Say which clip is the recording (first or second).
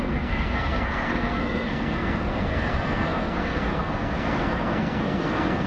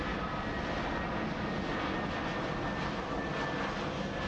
second